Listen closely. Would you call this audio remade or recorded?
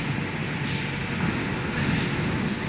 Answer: recorded